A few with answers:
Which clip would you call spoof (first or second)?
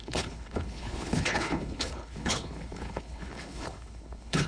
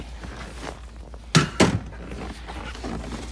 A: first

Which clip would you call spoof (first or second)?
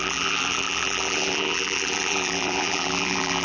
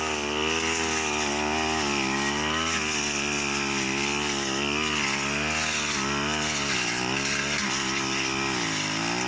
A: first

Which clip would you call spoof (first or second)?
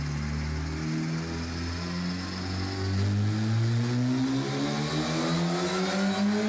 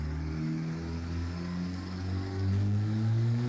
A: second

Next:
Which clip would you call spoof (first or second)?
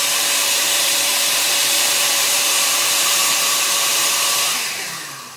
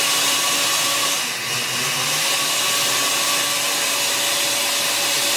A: first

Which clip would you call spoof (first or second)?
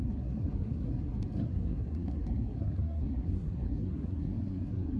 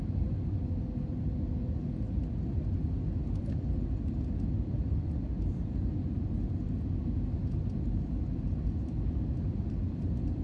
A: first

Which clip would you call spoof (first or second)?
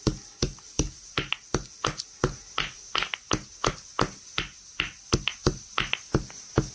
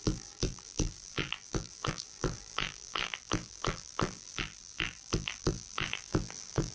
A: second